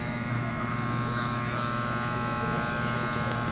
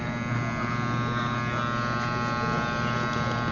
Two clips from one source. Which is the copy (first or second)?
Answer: first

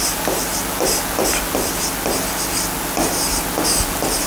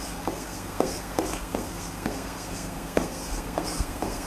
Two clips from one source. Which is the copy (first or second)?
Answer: second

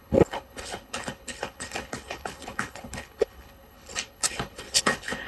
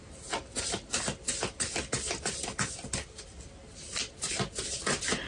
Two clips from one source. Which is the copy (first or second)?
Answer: first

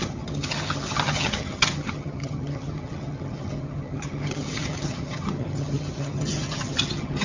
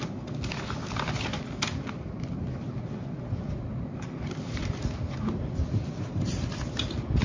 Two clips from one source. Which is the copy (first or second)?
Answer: first